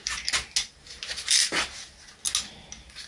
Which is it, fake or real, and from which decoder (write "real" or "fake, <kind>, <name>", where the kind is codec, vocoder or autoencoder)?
real